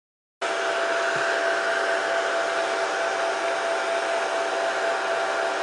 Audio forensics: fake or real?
real